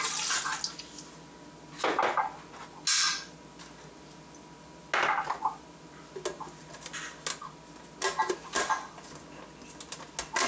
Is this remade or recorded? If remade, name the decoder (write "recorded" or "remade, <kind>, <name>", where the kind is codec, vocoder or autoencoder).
recorded